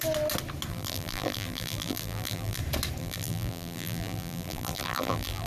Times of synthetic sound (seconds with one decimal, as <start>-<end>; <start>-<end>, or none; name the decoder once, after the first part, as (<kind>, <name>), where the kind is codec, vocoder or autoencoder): 0.7-2.6 (vocoder, BigVGAN v2); 3.0-5.5

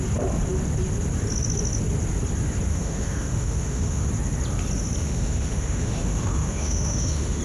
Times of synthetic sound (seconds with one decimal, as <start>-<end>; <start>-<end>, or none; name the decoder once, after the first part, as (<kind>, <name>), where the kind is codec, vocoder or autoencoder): 2.7-4.1 (autoencoder, DAC-VAE); 5.0-7.4

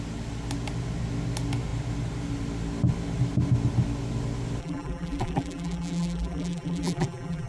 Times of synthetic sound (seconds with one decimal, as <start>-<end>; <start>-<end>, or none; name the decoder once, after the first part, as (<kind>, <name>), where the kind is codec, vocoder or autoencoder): 4.6-7.5 (vocoder, BigVGAN v2)